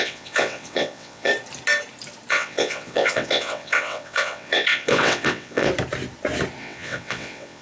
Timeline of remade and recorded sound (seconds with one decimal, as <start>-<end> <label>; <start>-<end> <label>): 0.0-1.3 remade; 1.3-2.3 recorded; 2.3-5.7 remade; 5.7-6.6 recorded; 6.6-7.6 remade